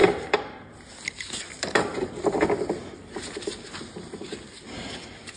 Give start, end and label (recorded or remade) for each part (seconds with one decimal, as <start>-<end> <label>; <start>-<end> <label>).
0.0-0.7 remade; 0.7-5.4 recorded